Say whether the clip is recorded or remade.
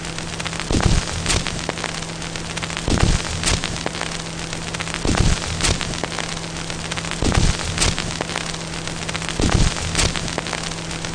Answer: recorded